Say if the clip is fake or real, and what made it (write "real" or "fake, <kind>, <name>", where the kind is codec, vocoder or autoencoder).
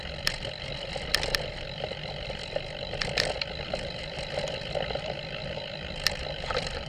fake, vocoder, BigVGAN v2